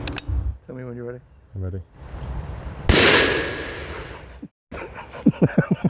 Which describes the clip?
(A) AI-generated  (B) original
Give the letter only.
B